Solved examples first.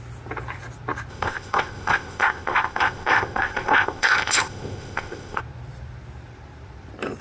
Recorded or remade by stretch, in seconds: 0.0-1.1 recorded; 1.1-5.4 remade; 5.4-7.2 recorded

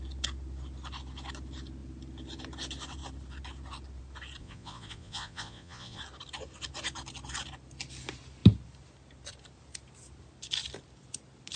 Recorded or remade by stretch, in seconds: 0.0-4.4 recorded; 4.4-6.0 remade; 6.0-11.6 recorded

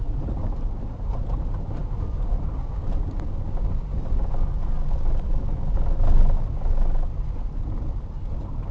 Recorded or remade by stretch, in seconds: 0.0-8.7 recorded

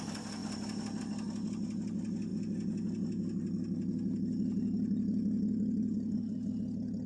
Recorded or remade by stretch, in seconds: 0.0-7.1 recorded

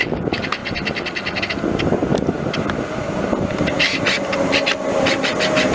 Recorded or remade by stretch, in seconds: 0.0-5.7 recorded

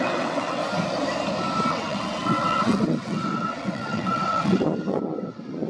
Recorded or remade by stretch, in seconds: 0.0-0.6 remade; 0.6-1.7 recorded; 1.7-5.7 remade